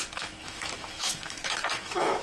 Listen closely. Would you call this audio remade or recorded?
remade